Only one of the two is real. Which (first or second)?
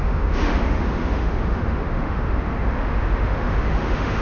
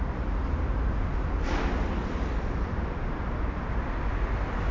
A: second